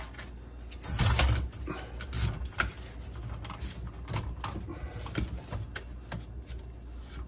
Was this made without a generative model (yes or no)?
yes